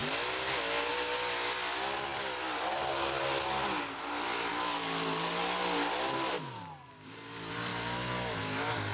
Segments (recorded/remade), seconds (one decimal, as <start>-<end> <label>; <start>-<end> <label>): 0.0-8.9 recorded

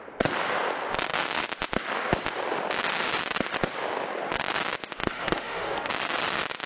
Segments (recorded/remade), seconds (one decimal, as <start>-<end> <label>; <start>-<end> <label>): 0.0-5.0 recorded; 5.0-5.9 remade; 5.9-6.7 recorded

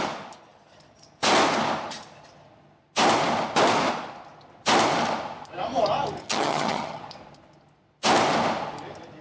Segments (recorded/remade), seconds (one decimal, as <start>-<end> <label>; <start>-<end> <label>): 0.0-6.2 recorded; 6.2-7.0 remade; 7.0-9.2 recorded

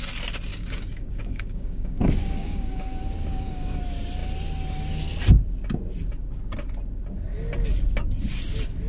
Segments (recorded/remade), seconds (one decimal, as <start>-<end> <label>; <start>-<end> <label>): 0.0-0.5 recorded; 0.5-3.8 remade; 3.8-8.9 recorded